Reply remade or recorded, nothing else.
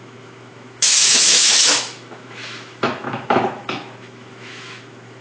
remade